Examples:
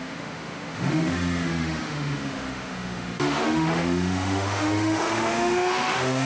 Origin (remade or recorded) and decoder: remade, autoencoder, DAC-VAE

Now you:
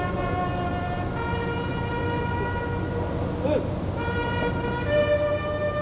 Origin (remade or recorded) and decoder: recorded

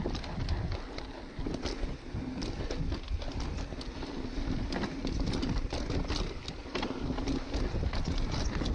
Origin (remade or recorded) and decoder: recorded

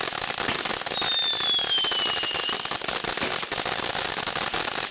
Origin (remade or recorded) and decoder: recorded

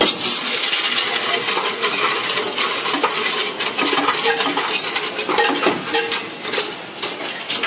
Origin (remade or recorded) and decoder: recorded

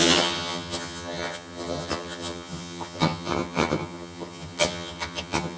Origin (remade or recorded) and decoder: remade, vocoder, HiFi-GAN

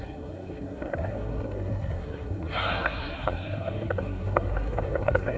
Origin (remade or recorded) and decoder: remade, codec, SNAC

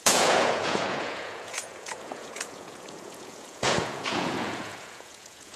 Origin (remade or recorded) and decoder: remade, vocoder, Vocos